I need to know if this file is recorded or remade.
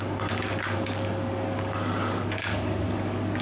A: remade